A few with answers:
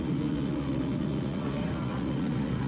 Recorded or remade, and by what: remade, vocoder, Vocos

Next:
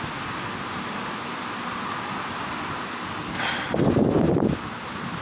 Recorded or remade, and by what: recorded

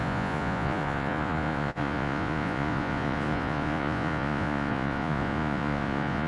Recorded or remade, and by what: remade, vocoder, Vocos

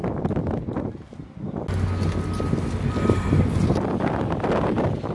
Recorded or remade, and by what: recorded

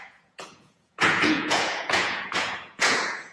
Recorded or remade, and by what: remade, vocoder, Vocos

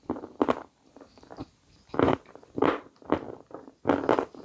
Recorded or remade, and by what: recorded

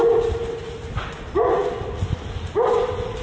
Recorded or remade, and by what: recorded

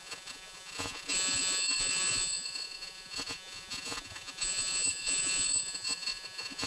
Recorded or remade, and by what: remade, vocoder, Vocos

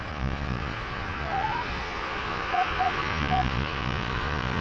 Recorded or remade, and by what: remade, vocoder, Vocos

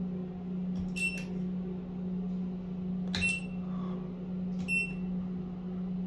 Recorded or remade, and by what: recorded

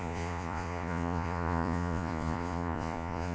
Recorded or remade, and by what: remade, vocoder, Vocos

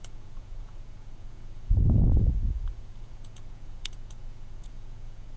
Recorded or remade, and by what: remade, vocoder, Vocos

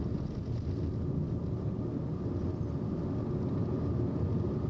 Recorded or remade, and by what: recorded